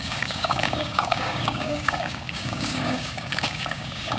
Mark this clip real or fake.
fake